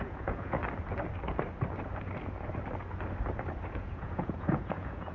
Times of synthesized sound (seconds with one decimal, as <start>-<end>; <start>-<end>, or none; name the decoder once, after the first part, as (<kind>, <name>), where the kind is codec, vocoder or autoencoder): 0.0-0.6 (vocoder, Vocos); 3.7-5.1